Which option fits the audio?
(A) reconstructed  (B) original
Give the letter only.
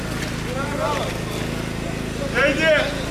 B